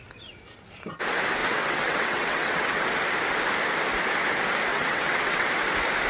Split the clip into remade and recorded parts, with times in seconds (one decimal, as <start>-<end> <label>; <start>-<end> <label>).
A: 0.0-1.4 recorded; 1.4-2.8 remade; 2.8-4.7 recorded; 4.7-5.5 remade; 5.5-6.1 recorded